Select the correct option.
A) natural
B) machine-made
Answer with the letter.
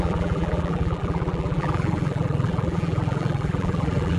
B